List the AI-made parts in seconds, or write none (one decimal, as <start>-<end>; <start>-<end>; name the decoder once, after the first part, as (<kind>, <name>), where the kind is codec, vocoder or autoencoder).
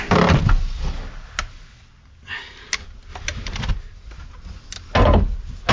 none